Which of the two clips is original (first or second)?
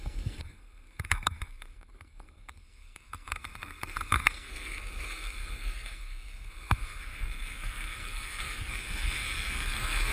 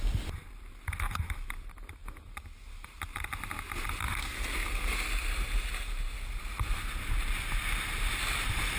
second